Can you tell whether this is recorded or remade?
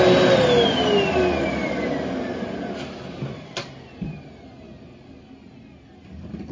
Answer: recorded